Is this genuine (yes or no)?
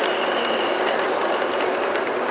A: yes